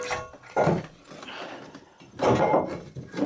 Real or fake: real